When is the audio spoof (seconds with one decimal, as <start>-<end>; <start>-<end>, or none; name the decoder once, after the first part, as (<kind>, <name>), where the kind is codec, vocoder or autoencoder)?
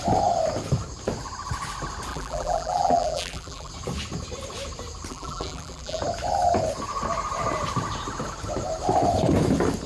2.1-3.7 (vocoder, BigVGAN v2); 5.1-6.0